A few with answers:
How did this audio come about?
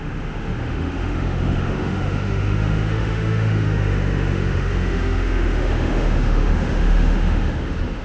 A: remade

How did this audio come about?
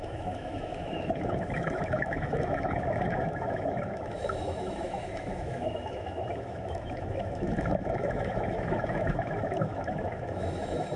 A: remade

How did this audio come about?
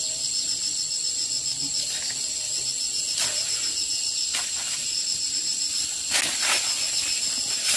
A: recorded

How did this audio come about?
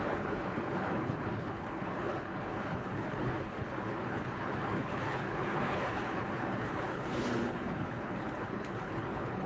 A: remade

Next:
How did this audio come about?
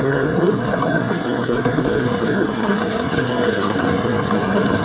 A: remade